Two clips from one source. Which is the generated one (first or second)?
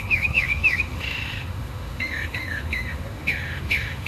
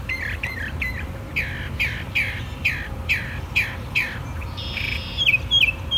first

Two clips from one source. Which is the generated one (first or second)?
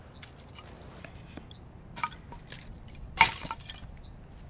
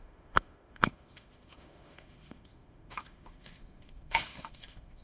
second